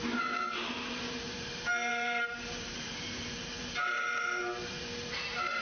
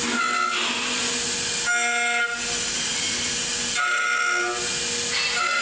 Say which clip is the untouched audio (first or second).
second